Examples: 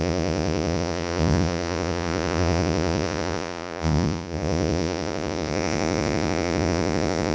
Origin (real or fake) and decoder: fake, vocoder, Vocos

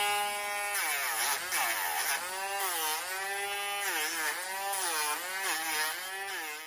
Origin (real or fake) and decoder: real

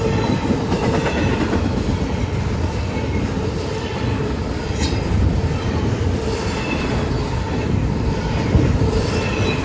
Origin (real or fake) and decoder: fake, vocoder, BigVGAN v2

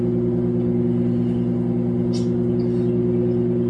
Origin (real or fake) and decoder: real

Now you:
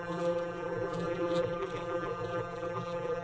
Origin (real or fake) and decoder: fake, vocoder, BigVGAN v2